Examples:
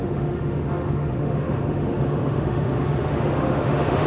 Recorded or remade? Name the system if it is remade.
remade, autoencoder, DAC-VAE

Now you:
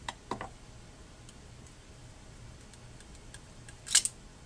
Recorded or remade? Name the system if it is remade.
recorded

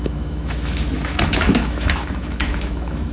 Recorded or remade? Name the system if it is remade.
remade, autoencoder, DAC-VAE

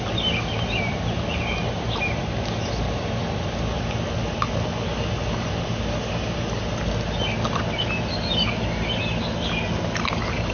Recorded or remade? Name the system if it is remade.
recorded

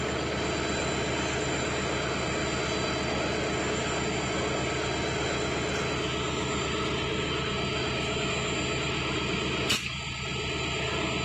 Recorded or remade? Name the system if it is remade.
recorded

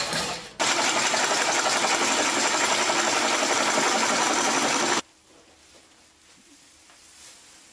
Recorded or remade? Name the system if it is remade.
recorded